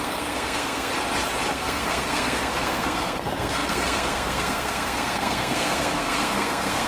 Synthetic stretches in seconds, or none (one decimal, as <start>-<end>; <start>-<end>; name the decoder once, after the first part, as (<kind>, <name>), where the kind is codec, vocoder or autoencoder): 0.0-0.9 (codec, SNAC); 1.5-6.9